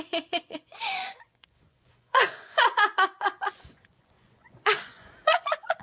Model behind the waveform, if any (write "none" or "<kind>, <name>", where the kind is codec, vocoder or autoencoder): vocoder, Vocos